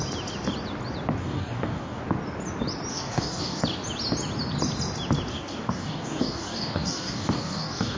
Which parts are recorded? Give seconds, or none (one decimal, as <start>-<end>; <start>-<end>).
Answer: 0.0-1.2; 2.0-2.9; 3.6-5.3